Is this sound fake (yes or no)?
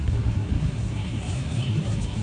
yes